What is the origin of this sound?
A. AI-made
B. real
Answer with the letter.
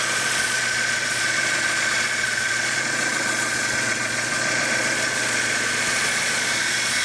A